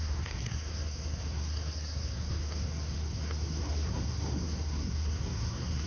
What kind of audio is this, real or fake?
fake